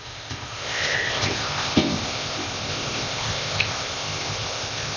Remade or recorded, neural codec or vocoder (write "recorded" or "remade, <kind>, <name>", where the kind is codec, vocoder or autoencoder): remade, codec, ZipCodec